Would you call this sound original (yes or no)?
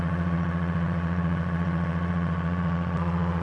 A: no